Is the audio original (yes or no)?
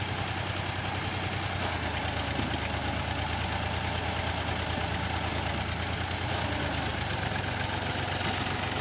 yes